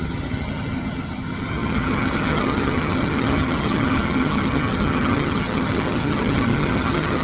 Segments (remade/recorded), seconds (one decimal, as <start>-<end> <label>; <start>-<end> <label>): 0.0-7.2 remade